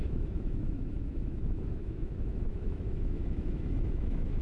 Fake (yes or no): yes